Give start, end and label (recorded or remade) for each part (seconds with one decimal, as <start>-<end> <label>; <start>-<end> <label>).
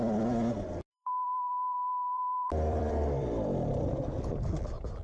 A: 0.0-0.9 recorded; 0.9-3.9 remade; 3.9-5.0 recorded